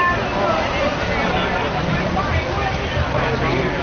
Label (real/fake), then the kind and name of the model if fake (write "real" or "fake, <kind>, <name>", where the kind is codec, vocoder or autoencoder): real